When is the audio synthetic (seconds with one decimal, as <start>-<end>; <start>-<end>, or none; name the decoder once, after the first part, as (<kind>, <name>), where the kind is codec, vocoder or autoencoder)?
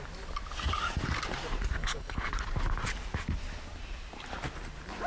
1.8-2.3 (codec, HILCodec)